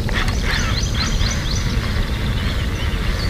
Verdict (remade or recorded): recorded